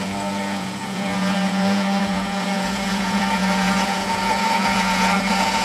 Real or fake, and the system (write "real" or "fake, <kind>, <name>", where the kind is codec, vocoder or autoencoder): fake, vocoder, Vocos